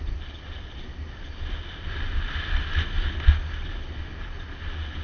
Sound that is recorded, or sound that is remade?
recorded